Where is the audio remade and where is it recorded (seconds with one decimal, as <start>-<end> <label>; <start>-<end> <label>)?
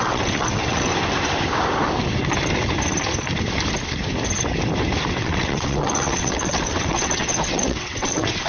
0.0-0.9 remade; 0.9-5.2 recorded; 5.2-8.5 remade